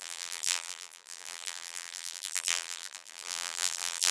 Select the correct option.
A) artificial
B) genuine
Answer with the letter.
A